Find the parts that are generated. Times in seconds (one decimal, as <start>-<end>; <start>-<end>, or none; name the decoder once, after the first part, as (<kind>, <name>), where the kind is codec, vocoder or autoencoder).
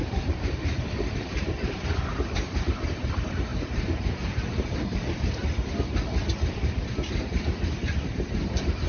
0.0-5.4 (vocoder, BigVGAN v2); 6.3-8.9